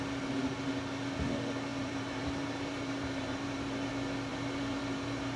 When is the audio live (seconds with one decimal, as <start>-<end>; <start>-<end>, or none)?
0.0-1.7; 3.9-4.3